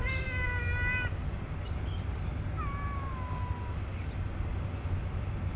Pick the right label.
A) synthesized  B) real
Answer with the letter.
B